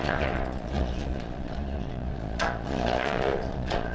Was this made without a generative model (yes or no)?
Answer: no